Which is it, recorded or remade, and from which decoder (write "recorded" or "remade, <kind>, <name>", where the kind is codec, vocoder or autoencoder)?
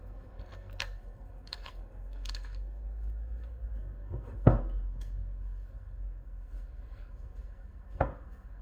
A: remade, codec, SNAC